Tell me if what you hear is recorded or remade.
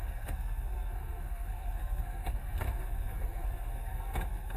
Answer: remade